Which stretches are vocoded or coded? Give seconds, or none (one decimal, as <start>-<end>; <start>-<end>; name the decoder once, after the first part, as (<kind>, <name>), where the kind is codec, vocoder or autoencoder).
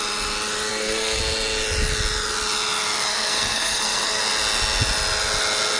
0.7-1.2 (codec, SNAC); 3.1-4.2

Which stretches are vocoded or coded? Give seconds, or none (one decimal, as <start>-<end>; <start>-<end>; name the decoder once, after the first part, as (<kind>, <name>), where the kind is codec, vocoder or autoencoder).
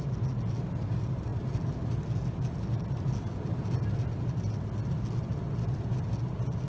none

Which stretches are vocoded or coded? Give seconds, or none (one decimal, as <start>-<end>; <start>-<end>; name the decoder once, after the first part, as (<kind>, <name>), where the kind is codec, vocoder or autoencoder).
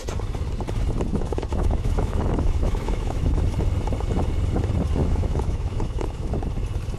1.1-3.4 (autoencoder, DAC-VAE); 5.0-6.3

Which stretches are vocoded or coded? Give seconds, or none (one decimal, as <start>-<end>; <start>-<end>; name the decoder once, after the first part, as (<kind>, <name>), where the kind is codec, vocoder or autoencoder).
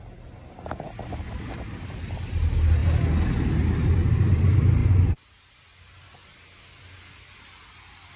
none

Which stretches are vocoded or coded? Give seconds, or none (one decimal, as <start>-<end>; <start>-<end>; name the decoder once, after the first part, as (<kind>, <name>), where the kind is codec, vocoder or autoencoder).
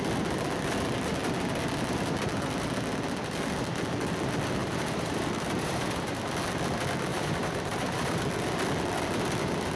4.6-6.2 (vocoder, BigVGAN v2); 7.1-8.2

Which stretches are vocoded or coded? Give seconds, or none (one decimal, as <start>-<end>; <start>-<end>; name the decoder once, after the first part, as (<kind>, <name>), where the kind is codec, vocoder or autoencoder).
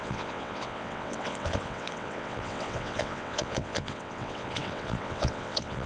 0.0-5.9 (vocoder, WaveNeXt)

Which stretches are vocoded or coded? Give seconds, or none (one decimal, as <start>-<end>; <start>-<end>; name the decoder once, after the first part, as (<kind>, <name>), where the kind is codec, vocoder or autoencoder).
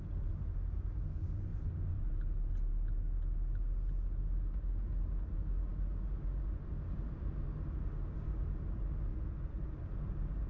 1.5-2.0 (vocoder, BigVGAN v2)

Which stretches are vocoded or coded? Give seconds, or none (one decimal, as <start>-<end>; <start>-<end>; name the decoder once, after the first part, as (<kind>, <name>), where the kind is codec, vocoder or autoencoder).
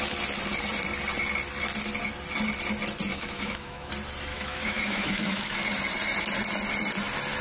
3.1-3.9 (autoencoder, DAC-VAE); 4.3-5.6